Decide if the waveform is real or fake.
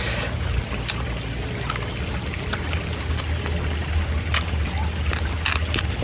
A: real